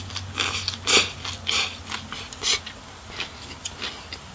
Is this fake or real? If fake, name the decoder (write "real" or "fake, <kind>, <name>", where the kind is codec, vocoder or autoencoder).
real